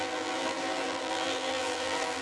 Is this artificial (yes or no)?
yes